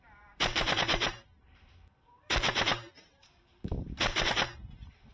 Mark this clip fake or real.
fake